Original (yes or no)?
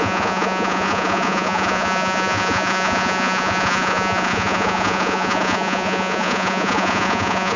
no